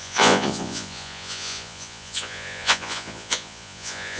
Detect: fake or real fake